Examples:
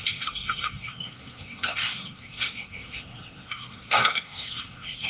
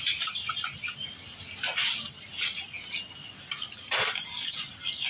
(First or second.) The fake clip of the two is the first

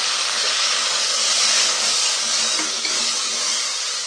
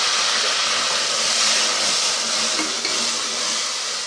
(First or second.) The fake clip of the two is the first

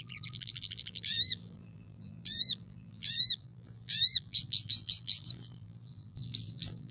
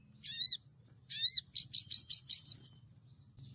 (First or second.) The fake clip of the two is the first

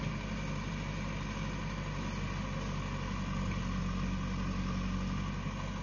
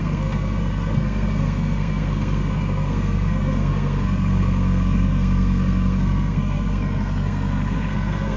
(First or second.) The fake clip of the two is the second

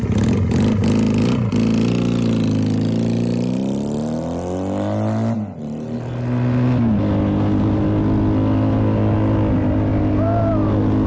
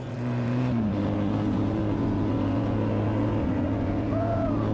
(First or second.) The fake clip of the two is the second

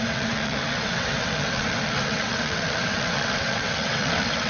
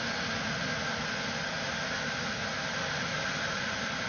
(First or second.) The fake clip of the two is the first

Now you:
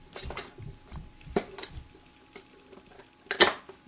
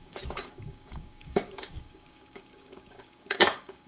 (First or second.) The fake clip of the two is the second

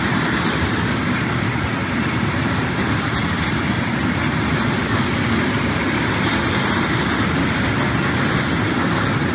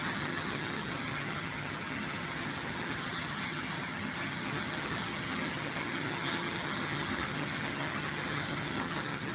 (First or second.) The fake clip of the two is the second